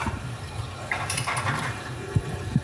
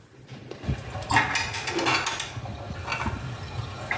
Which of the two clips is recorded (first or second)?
second